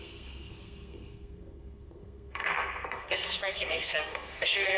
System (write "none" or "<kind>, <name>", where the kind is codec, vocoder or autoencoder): codec, SNAC